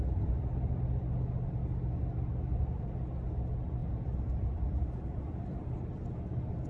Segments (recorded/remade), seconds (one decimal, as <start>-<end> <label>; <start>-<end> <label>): 0.0-1.6 remade; 1.6-2.4 recorded; 2.4-6.7 remade